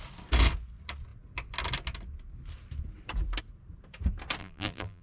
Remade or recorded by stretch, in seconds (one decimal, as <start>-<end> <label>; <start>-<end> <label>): 0.0-4.4 recorded; 4.4-5.0 remade